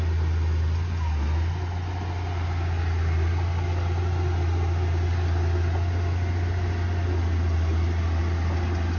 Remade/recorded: recorded